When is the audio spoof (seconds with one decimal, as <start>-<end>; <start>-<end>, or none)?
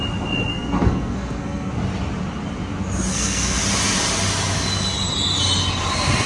0.5-1.7; 3.1-3.6